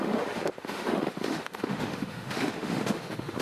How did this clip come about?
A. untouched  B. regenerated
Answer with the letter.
B